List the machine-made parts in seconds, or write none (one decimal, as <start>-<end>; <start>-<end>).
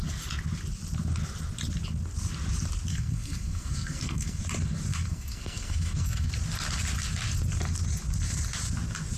2.9-4.4; 4.9-6.3